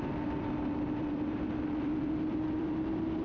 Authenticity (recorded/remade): remade